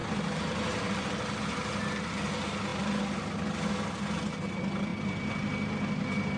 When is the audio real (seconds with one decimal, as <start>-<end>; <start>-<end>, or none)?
0.0-6.4